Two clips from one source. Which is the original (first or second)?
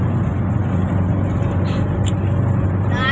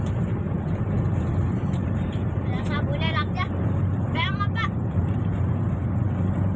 first